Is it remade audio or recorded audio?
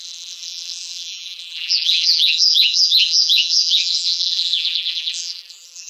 remade